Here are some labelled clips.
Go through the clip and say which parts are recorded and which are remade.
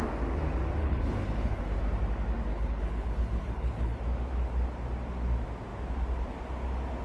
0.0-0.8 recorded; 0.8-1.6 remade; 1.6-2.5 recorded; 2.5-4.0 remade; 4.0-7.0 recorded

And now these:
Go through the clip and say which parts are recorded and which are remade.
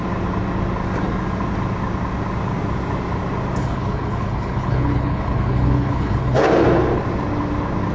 0.0-3.6 recorded; 3.6-6.5 remade; 6.5-7.9 recorded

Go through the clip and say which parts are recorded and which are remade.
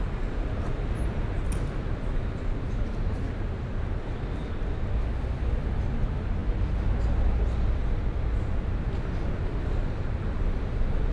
0.0-11.1 recorded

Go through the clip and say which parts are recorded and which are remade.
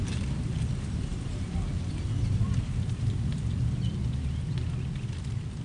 0.0-5.6 recorded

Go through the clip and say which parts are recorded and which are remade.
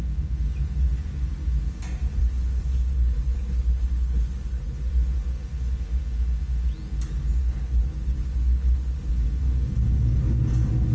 0.0-2.2 recorded; 2.2-4.9 remade; 4.9-7.4 recorded; 7.4-9.1 remade; 9.1-10.9 recorded